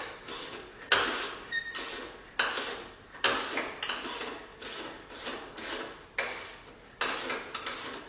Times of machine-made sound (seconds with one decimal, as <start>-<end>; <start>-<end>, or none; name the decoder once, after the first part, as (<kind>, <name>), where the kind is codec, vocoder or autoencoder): none